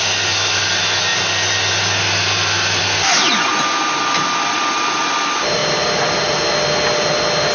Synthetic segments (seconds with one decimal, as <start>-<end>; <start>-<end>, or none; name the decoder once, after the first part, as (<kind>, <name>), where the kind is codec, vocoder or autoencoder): none